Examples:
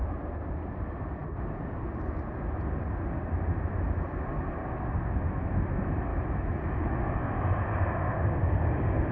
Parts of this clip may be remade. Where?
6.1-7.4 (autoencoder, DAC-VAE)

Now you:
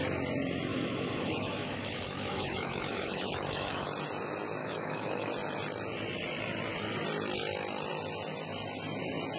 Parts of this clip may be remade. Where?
0.7-3.9 (autoencoder, DAC-VAE); 4.6-5.3